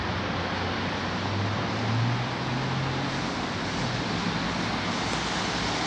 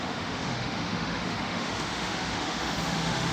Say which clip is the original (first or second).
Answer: first